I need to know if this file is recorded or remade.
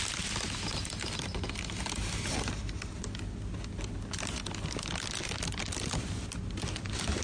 recorded